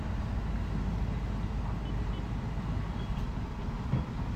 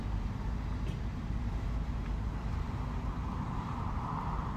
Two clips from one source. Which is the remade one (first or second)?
second